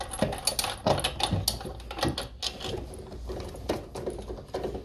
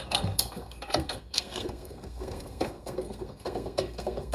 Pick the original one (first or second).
first